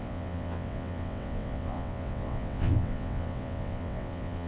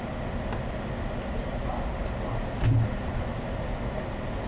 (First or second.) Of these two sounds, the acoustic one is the second